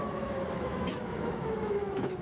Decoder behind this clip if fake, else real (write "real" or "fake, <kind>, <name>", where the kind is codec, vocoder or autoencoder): fake, autoencoder, DAC-VAE